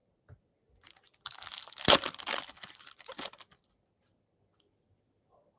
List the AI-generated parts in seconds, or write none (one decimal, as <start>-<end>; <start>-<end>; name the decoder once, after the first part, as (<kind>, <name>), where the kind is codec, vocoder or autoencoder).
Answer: none